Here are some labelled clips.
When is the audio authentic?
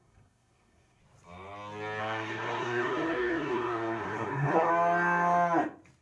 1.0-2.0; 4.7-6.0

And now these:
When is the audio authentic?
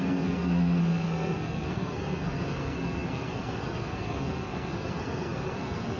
none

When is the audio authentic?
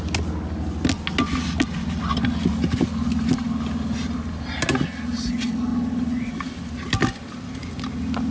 0.0-8.3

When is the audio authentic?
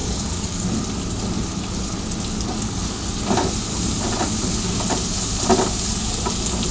0.8-1.5; 3.5-6.7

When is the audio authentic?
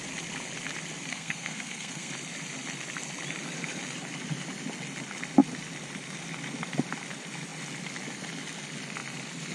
0.0-1.1; 2.1-9.5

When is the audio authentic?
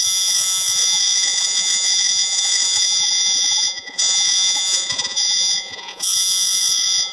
none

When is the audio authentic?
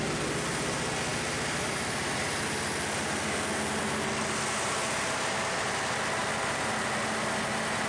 0.0-7.9